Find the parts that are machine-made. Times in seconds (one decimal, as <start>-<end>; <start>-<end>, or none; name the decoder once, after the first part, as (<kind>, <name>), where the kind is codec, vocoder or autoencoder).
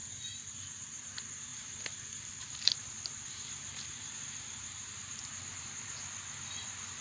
1.5-5.7 (vocoder, BigVGAN v2)